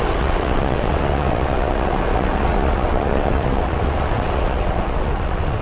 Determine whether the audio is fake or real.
fake